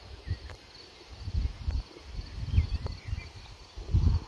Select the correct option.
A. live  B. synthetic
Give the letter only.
A